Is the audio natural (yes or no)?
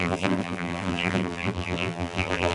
no